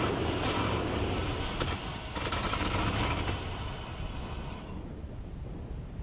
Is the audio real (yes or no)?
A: yes